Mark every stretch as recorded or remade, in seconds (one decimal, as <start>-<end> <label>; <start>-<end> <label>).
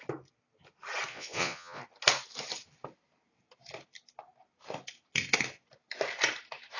0.0-1.1 recorded; 1.1-1.8 remade; 1.8-6.8 recorded